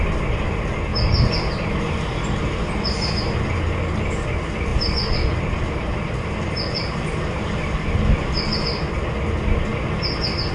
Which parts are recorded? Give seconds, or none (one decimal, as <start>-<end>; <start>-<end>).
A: 0.0-0.9; 3.2-4.7; 7.8-10.5